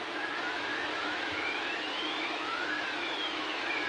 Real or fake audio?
fake